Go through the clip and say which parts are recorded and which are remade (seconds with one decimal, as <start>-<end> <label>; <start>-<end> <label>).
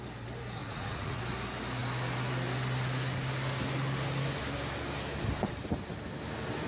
0.0-0.6 recorded; 0.6-1.2 remade; 1.2-6.7 recorded